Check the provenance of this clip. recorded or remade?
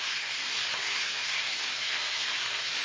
remade